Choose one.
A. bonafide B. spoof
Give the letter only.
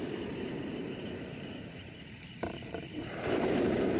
B